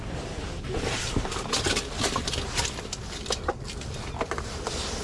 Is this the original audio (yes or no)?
yes